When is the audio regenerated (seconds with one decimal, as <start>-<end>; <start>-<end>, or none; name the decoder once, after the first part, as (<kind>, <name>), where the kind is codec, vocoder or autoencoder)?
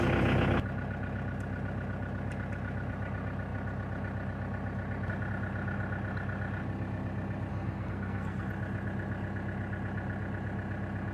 7.5-8.5 (codec, SNAC)